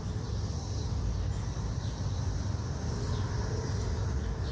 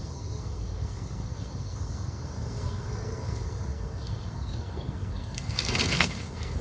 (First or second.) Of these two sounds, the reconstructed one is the second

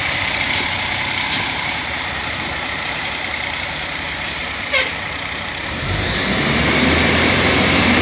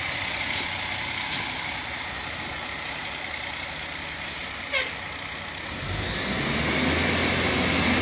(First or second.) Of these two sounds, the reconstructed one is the first